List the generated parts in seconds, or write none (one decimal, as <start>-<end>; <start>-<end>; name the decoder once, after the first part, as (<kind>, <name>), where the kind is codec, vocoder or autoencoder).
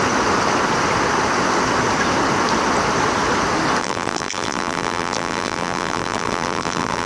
3.8-7.1 (vocoder, BigVGAN v2)